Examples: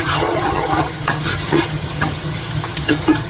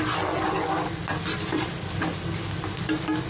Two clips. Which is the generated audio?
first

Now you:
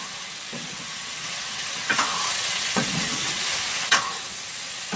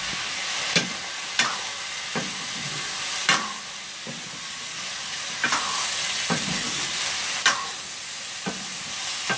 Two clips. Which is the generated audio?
first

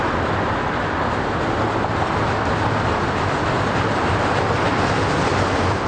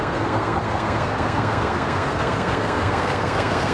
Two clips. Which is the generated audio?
second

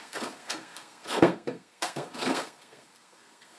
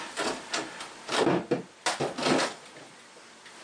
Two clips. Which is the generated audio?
first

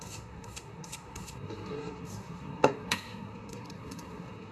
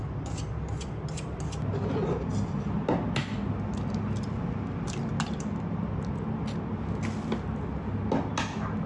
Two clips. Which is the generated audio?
first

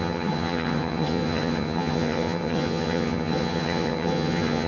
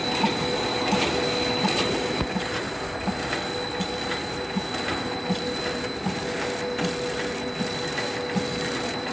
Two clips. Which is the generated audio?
first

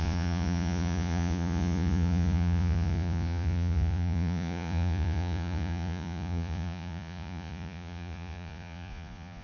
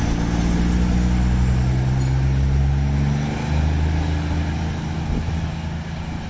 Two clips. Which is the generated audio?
first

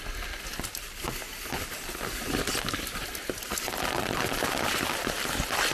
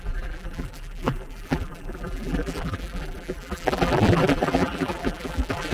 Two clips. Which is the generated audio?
second